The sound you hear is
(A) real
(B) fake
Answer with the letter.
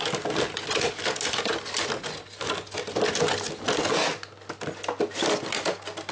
A